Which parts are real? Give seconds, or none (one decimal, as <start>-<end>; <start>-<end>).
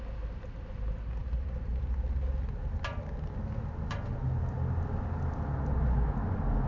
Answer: 0.0-1.2; 1.8-6.7